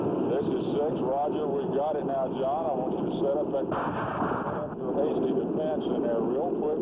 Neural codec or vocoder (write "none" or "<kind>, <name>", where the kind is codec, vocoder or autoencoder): none